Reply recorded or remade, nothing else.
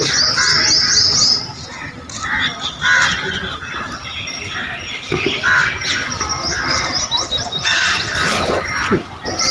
recorded